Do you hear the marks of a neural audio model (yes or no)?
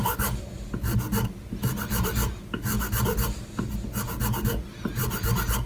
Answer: no